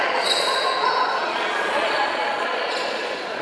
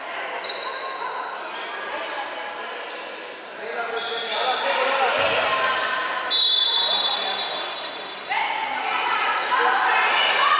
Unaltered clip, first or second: second